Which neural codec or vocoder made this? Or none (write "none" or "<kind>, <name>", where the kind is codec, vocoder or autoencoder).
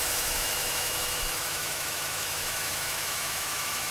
autoencoder, DAC-VAE